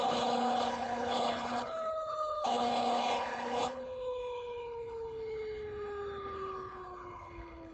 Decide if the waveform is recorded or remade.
remade